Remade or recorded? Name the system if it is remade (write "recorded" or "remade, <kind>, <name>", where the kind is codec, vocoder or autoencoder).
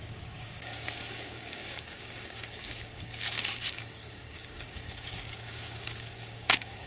remade, codec, DAC